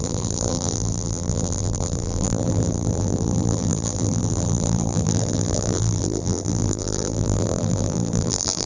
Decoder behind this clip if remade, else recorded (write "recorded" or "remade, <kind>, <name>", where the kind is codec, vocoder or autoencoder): remade, vocoder, BigVGAN v2